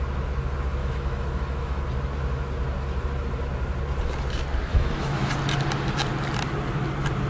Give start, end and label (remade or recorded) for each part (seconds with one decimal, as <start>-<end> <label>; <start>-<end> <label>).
0.0-0.8 recorded; 0.8-1.8 remade; 1.8-4.7 recorded; 4.7-5.3 remade; 5.3-7.3 recorded